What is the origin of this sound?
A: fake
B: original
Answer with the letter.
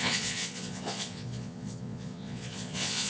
A